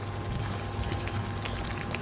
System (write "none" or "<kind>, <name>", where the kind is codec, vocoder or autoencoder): none